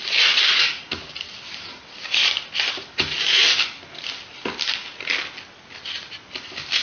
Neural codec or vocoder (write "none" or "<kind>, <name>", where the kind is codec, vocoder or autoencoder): none